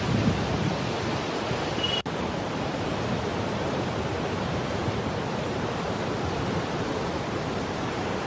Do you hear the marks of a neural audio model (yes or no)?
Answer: yes